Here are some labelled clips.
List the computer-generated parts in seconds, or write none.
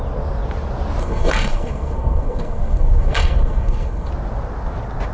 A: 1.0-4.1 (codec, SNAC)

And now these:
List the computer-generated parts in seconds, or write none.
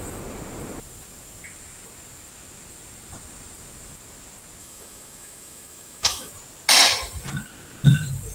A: 4.6-6.3 (autoencoder, DAC-VAE)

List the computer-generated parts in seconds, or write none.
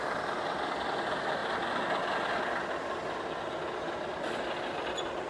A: none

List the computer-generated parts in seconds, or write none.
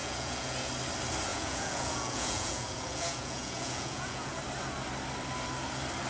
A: 0.0-0.7 (vocoder, Vocos); 1.3-4.4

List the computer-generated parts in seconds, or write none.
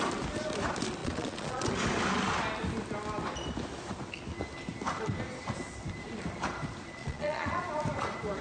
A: 1.0-1.7 (vocoder, Vocos); 7.0-7.6